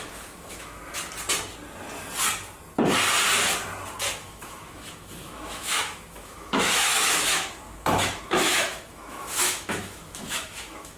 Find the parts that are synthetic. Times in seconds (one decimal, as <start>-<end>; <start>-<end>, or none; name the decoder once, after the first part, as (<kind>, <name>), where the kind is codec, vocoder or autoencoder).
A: 0.0-0.8 (autoencoder, DAC-VAE); 4.2-11.0